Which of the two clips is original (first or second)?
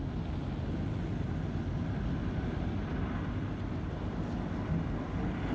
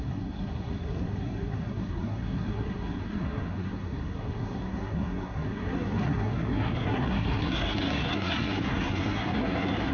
first